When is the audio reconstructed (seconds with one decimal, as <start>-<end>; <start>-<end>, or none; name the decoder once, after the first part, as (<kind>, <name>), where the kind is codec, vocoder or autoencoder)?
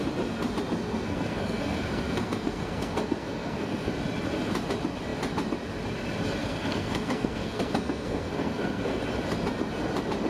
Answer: 0.8-3.9 (codec, SNAC); 6.4-9.0